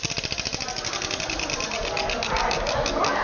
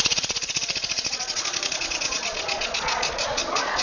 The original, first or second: first